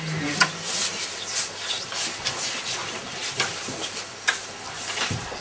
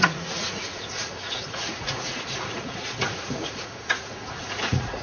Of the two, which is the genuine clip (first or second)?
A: first